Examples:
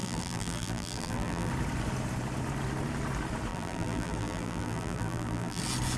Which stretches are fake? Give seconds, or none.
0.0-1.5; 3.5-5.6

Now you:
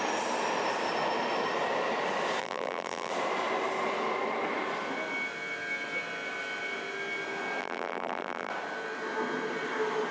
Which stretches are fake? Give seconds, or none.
2.4-3.1; 7.6-8.5

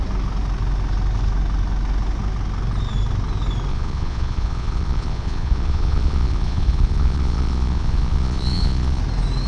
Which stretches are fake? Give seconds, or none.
3.7-9.0

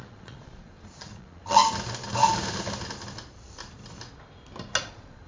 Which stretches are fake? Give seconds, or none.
0.0-1.6; 4.8-5.3

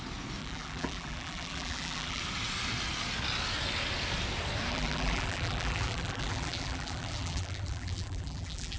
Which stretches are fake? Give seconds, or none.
0.4-2.2; 4.7-8.8

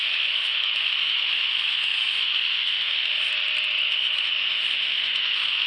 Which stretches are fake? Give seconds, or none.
0.0-3.3; 3.9-5.7

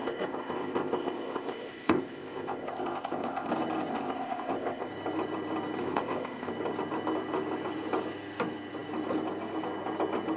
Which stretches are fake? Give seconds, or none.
0.0-3.5; 3.9-4.9; 5.8-6.5

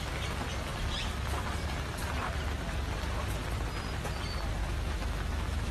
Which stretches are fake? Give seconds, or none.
4.6-5.7